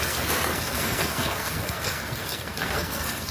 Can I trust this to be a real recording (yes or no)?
no